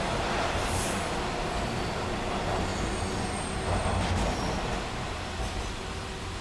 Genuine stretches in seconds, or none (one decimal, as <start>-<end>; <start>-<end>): 0.0-6.4